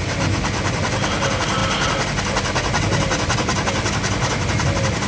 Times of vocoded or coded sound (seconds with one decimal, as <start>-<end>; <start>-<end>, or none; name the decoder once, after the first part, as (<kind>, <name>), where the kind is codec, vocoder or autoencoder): none